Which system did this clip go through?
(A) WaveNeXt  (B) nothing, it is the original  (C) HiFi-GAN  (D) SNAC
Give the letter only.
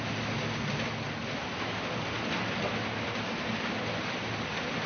B